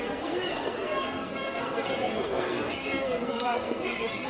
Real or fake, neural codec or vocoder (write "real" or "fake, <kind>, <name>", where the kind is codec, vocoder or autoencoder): fake, codec, SNAC